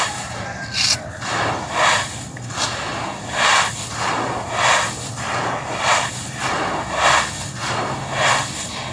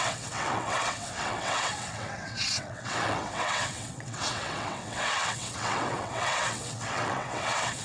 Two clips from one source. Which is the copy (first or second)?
second